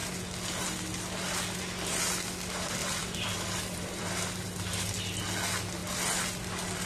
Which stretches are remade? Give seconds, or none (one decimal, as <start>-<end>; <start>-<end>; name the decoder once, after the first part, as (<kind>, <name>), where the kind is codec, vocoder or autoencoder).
2.8-4.0 (vocoder, BigVGAN v2)